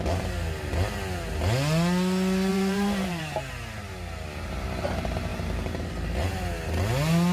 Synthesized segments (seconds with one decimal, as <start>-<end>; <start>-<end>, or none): 2.5-3.2